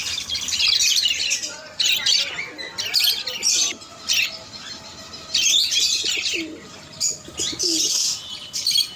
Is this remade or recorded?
recorded